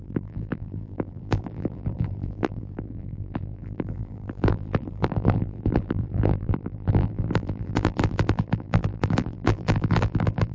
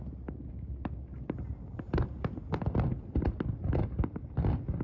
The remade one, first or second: first